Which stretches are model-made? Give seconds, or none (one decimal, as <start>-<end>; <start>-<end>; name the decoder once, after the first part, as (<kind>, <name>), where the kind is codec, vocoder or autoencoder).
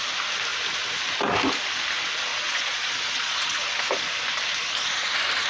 2.3-3.8 (vocoder, Vocos)